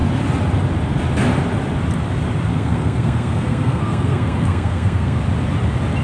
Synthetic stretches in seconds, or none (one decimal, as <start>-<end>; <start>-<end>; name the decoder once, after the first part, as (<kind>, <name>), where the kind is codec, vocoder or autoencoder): 2.5-5.2 (codec, SNAC)